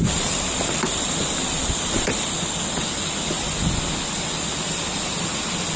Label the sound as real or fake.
real